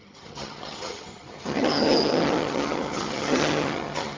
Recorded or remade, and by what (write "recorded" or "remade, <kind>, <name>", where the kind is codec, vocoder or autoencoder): remade, vocoder, HiFi-GAN